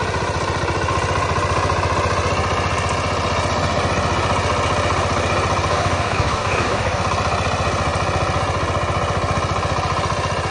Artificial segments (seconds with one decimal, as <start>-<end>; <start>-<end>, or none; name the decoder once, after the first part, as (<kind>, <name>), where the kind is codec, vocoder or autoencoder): 5.7-7.0 (codec, DAC)